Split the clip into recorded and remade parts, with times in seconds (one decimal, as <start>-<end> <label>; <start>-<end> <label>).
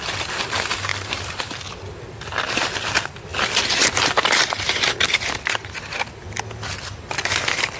0.0-7.8 recorded